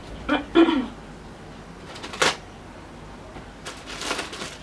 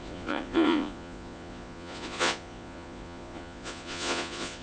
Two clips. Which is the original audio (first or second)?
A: first